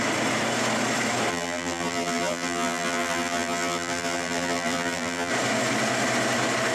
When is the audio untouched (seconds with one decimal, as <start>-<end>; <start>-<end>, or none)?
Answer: 0.0-1.3; 5.3-6.7